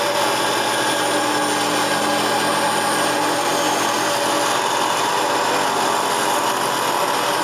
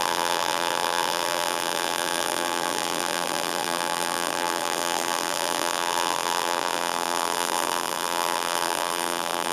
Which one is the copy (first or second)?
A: second